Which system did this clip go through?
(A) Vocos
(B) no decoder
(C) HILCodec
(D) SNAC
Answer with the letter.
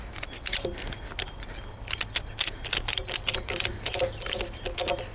B